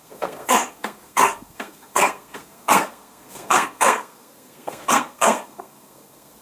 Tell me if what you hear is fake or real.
fake